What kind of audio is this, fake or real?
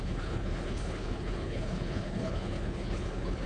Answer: fake